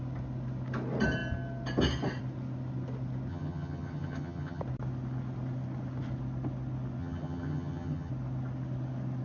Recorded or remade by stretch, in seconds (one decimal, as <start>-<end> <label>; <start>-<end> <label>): 0.0-3.3 recorded; 3.3-4.6 remade; 4.6-7.0 recorded; 7.0-8.1 remade; 8.1-9.2 recorded